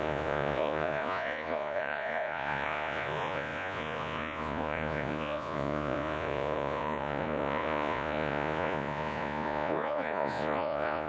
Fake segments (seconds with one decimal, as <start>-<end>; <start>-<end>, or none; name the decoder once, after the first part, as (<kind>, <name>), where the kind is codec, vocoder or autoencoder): 0.0-11.1 (vocoder, Vocos)